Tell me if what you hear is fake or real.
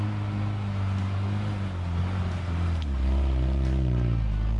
real